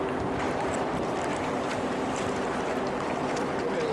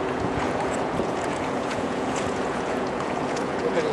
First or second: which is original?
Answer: first